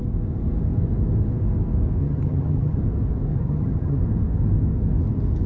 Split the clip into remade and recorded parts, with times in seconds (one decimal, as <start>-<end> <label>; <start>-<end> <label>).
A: 0.0-2.0 recorded; 2.0-2.8 remade; 2.8-3.3 recorded; 3.3-4.0 remade; 4.0-5.5 recorded